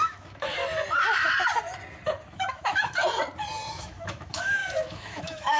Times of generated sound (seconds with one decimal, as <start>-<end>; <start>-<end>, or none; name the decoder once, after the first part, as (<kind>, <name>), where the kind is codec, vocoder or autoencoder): 0.0-0.6 (autoencoder, DAC-VAE); 2.3-3.0; 3.7-5.6